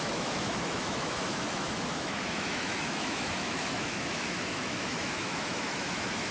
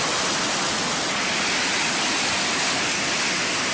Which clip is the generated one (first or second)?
first